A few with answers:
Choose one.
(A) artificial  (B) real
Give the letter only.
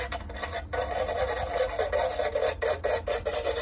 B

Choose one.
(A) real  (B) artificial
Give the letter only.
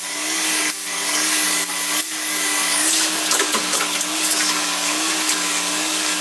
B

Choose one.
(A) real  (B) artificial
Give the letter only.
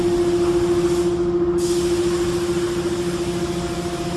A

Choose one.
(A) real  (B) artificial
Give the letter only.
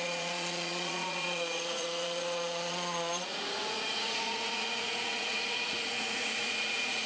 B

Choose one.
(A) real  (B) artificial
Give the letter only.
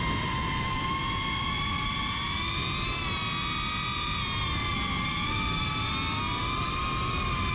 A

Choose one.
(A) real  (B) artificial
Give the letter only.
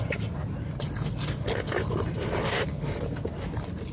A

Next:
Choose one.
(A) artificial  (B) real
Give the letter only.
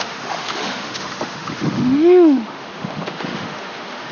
A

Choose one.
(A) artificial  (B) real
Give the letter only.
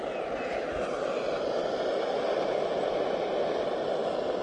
B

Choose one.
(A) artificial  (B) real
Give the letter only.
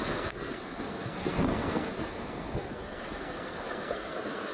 A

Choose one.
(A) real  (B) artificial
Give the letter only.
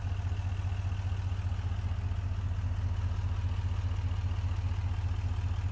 A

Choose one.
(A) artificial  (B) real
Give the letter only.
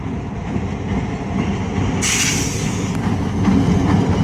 B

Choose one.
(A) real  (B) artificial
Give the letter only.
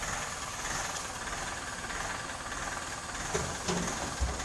A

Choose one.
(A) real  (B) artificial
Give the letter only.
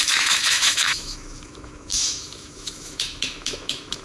B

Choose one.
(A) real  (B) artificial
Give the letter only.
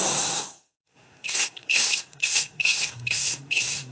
B